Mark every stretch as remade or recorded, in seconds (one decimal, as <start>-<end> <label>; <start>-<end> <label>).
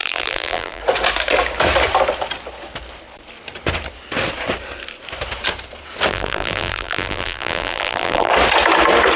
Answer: 0.0-0.8 remade; 0.8-6.1 recorded; 6.1-8.3 remade; 8.3-9.2 recorded